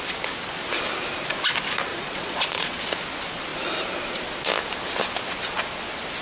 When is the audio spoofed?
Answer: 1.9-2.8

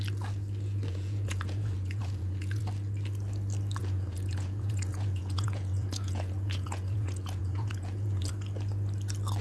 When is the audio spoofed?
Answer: 0.9-2.6; 3.8-8.3

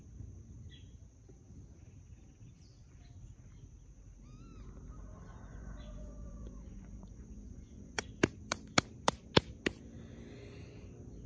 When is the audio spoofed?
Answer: 5.5-8.0

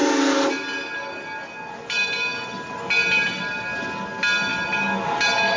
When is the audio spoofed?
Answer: none

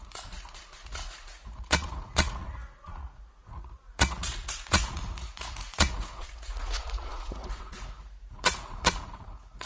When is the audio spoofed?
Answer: 0.0-9.7